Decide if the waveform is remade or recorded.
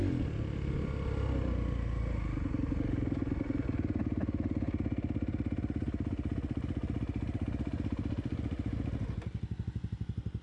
recorded